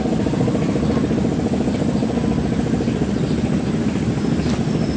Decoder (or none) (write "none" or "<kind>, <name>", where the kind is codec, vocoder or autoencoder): none